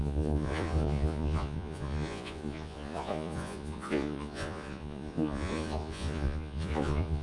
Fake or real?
fake